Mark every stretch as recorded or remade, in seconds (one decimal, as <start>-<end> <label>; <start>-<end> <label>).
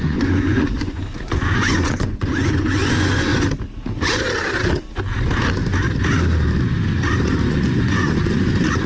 0.0-3.3 remade; 3.3-7.5 recorded; 7.5-8.9 remade